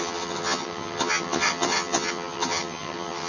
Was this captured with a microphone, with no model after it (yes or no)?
no